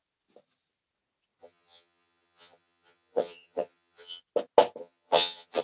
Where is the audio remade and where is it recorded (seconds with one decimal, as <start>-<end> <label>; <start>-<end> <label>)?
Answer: 0.0-1.4 recorded; 1.4-4.2 remade; 4.2-4.8 recorded; 4.8-5.6 remade